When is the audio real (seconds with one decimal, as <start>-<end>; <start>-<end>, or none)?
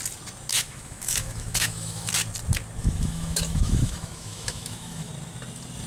0.0-0.5; 2.1-2.8; 5.1-5.9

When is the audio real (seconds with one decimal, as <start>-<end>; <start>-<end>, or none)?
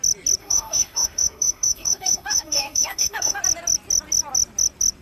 0.0-0.4; 3.4-5.0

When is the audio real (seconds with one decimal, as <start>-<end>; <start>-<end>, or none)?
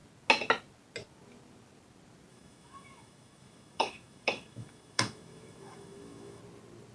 0.0-2.3; 6.4-6.9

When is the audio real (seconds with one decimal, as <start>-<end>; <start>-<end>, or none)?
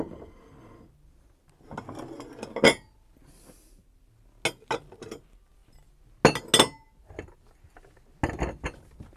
0.0-9.2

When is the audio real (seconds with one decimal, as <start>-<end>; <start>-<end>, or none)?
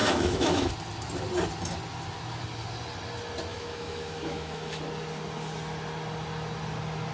0.7-3.5; 4.8-7.1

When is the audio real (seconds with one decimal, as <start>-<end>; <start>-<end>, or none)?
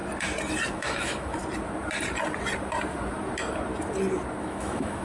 0.0-0.7; 1.4-4.4